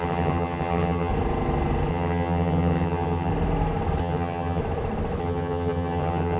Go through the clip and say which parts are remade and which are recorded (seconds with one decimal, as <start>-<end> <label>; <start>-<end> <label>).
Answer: 0.0-1.1 remade; 1.1-1.9 recorded; 1.9-3.3 remade; 3.3-4.0 recorded; 4.0-4.6 remade; 4.6-5.2 recorded; 5.2-6.4 remade

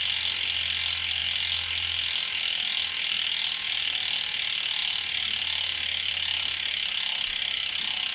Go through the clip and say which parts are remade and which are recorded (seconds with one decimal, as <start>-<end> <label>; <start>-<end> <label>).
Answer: 0.0-8.1 recorded

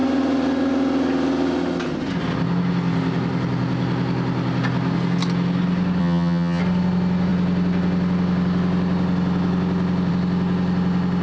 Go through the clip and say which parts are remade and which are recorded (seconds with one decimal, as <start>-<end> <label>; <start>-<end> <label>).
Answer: 0.0-6.0 recorded; 6.0-6.6 remade; 6.6-11.2 recorded

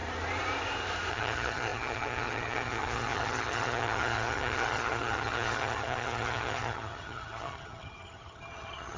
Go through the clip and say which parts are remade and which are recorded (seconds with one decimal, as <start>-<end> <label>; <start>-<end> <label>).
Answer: 0.0-1.1 recorded; 1.1-9.0 remade

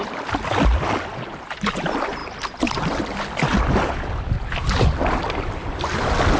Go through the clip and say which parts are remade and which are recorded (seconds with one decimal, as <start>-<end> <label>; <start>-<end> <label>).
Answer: 0.0-6.4 recorded

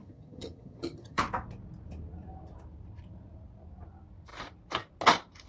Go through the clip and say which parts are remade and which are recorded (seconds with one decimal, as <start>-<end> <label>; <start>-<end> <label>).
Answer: 0.0-1.2 remade; 1.2-5.5 recorded